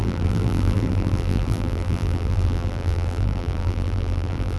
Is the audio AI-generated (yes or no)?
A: yes